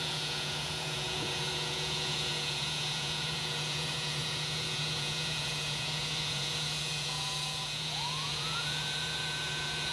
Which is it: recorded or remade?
remade